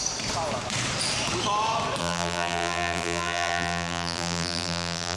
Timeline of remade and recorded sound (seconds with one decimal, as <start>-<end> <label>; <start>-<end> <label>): 0.0-2.0 recorded; 2.0-5.2 remade